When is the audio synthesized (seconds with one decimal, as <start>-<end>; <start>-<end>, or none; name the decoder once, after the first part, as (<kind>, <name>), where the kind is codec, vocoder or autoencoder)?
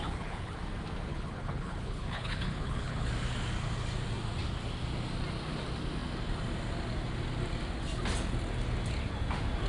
0.0-0.6 (codec, HILCodec); 1.1-3.1